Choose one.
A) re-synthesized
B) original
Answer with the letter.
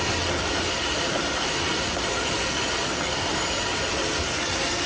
A